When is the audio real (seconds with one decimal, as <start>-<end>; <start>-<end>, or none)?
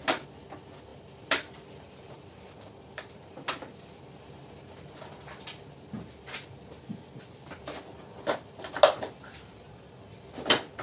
0.0-0.9; 2.5-10.8